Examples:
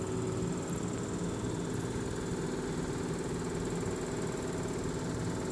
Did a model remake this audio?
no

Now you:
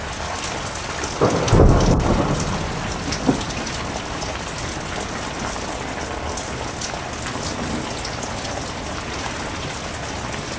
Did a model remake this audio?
no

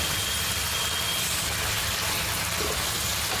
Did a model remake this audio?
no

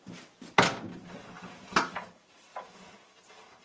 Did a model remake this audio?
no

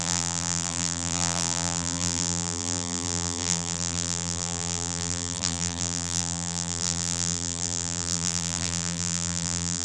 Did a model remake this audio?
yes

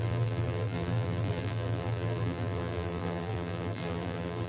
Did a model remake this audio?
yes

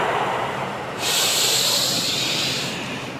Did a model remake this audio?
yes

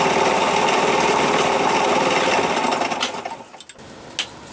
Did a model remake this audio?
no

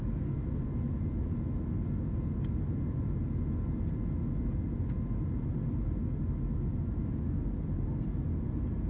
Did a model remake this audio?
no